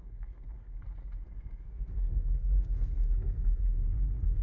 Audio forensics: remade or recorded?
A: remade